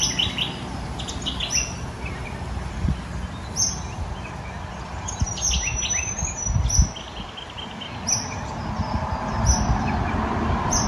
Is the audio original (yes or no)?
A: yes